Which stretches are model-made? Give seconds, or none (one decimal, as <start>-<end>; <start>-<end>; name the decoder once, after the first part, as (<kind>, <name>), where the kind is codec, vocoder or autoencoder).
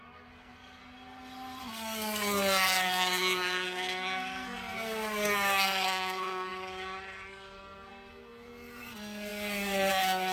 0.0-0.8 (codec, SNAC); 1.6-10.3